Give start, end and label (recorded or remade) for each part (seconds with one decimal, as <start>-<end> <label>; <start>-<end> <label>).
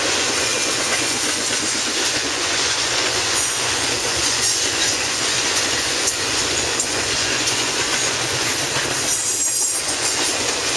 0.0-8.5 remade; 8.5-9.8 recorded; 9.8-10.8 remade